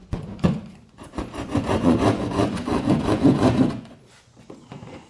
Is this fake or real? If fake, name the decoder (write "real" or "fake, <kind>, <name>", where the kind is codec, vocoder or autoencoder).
fake, vocoder, Vocos